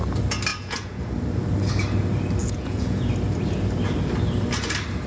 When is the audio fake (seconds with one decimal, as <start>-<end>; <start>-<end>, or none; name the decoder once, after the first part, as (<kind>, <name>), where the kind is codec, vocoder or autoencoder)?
0.5-1.0 (vocoder, Vocos); 2.4-3.1